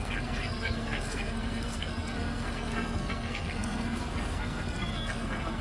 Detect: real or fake fake